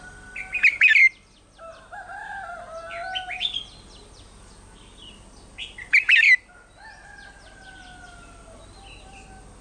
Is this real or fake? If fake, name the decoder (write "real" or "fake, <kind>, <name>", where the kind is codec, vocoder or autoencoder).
real